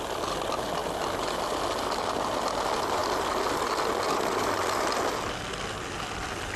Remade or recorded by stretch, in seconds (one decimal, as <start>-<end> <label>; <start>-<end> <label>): 0.0-6.6 recorded